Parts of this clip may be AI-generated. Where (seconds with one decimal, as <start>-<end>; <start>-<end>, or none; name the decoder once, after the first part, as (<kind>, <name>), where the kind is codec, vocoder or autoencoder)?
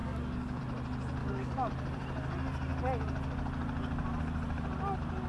0.0-0.6 (codec, DAC); 1.2-1.7